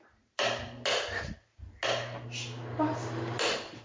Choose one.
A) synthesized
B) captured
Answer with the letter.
B